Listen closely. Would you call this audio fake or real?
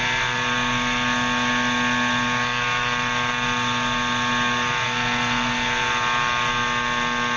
real